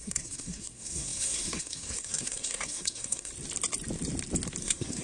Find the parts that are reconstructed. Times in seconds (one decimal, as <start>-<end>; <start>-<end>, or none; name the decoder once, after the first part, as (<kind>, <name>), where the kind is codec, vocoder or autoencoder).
0.0-3.3 (codec, SNAC); 4.6-5.0